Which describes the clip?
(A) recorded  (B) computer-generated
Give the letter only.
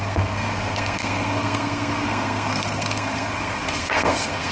B